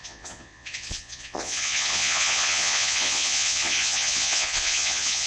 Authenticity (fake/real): fake